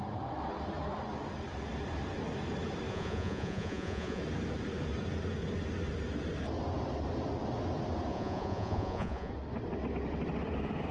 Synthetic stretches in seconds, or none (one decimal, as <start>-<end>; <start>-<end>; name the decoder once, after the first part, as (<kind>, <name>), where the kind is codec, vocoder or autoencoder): 2.9-4.2 (vocoder, Vocos); 8.1-9.3